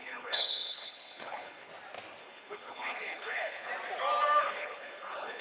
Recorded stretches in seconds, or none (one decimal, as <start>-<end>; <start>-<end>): 1.7-2.2; 3.7-4.4